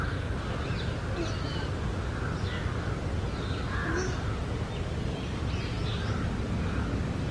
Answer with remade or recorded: recorded